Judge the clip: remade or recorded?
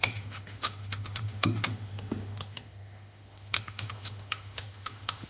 remade